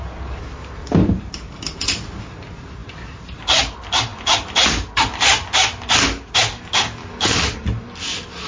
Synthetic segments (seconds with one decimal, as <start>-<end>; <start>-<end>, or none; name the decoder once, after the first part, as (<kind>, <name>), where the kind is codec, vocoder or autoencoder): 0.8-2.2 (vocoder, BigVGAN v2); 4.1-4.9; 7.0-8.5